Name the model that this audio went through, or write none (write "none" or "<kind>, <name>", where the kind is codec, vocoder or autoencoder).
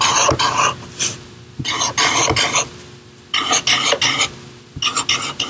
none